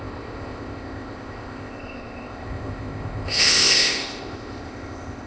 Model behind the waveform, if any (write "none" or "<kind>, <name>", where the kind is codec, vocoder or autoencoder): codec, ZipCodec